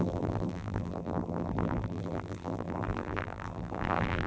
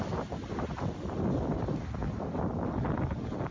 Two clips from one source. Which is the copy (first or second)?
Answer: first